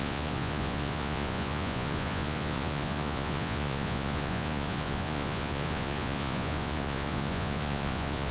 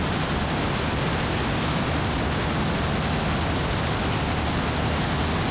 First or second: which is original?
second